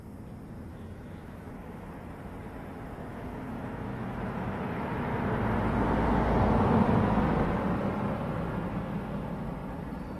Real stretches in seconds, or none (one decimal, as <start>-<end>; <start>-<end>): 0.0-0.7; 1.9-3.1; 4.6-10.2